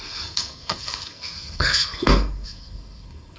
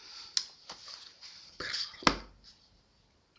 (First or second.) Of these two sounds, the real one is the second